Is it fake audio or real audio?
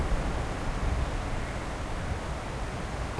real